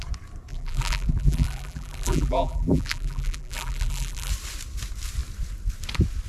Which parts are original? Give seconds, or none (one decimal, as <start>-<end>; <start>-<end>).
0.0-0.5; 4.3-6.3